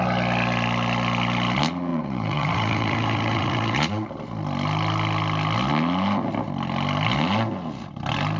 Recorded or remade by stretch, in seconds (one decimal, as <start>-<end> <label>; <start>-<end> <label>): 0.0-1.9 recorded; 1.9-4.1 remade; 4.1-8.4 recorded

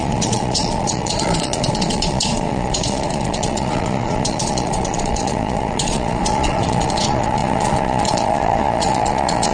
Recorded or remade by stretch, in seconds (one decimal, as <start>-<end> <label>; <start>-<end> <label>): 0.0-9.5 remade

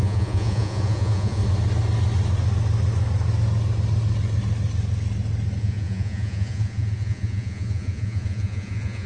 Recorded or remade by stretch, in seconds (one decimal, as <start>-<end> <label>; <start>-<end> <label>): 0.0-1.4 remade; 1.4-5.6 recorded; 5.6-9.1 remade